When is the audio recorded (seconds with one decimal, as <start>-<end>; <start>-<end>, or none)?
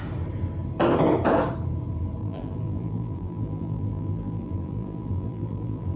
0.0-2.2